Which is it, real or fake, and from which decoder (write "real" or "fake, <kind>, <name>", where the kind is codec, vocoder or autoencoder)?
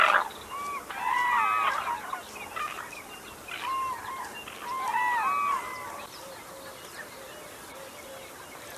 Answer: real